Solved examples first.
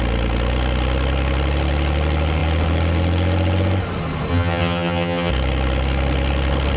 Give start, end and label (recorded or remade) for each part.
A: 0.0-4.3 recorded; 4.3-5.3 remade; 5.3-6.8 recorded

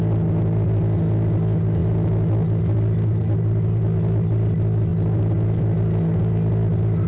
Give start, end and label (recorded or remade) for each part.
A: 0.0-7.1 recorded